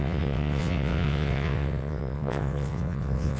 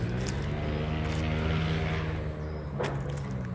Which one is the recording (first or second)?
second